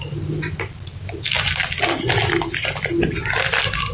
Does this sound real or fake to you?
real